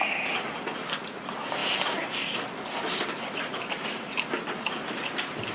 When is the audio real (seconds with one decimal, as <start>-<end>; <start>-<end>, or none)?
0.0-5.5